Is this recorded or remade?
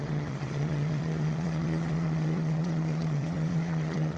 remade